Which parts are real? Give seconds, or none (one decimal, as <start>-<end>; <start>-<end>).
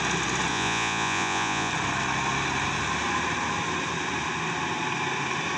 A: 0.0-0.5; 1.7-5.6